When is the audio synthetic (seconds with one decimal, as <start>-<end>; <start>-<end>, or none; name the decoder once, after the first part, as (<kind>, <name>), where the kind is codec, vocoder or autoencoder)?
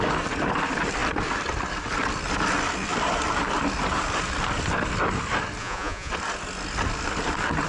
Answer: 5.6-6.1 (vocoder, Vocos)